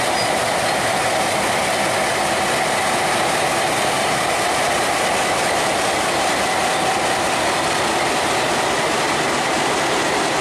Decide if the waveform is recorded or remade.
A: recorded